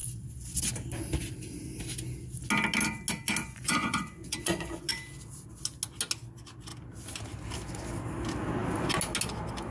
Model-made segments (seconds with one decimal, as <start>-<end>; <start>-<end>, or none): 3.4-4.9